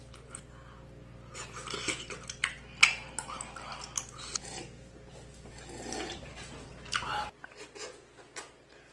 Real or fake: real